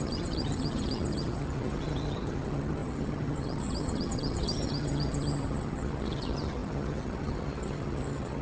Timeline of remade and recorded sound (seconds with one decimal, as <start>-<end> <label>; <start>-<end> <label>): 0.0-8.4 remade